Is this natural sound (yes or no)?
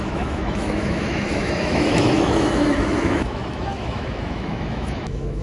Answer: no